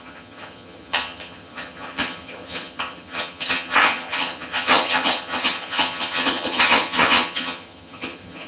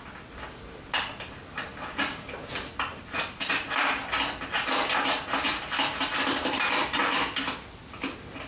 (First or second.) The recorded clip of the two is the second